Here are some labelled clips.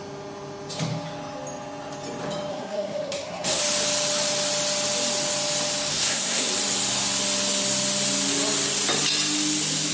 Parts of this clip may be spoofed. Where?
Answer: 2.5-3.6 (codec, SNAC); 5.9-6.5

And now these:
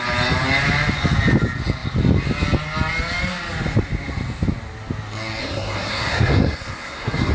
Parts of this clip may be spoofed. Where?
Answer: 5.4-7.3 (codec, SNAC)

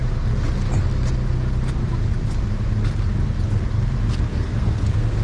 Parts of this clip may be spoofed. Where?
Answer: 4.3-5.2 (codec, SNAC)

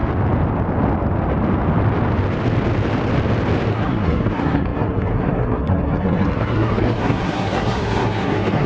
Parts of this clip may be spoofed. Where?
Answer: 3.7-8.7 (codec, SNAC)

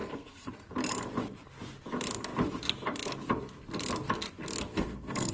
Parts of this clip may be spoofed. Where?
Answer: 0.0-0.5 (codec, SNAC); 4.7-5.3